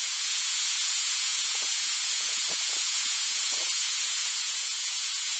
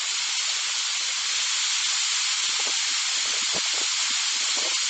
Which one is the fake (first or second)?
first